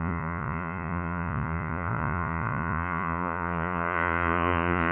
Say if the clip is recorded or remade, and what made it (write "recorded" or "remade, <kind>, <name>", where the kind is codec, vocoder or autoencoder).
remade, vocoder, Vocos